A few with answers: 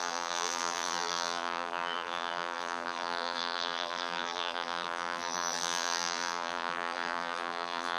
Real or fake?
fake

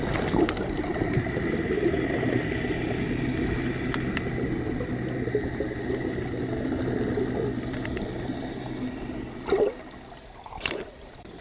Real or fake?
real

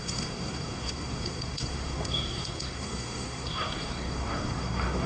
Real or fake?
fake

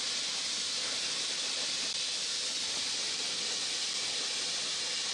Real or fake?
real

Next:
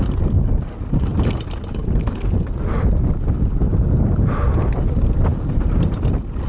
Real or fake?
real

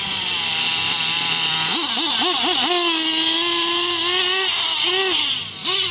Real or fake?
real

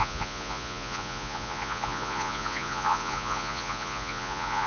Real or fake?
fake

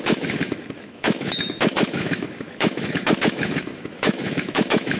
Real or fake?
fake